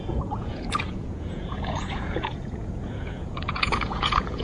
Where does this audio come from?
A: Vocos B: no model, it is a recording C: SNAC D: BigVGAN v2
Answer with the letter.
A